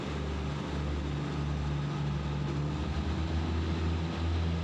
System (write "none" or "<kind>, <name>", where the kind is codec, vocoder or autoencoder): none